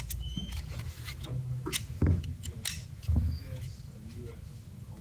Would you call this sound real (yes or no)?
no